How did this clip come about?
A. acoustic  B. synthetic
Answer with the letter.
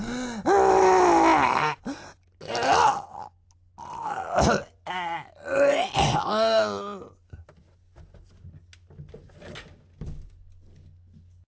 A